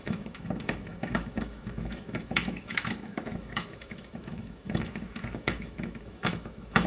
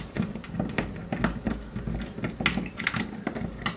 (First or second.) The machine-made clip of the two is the first